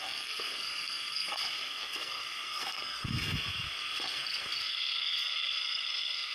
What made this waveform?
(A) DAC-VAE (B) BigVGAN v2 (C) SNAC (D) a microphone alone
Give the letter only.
C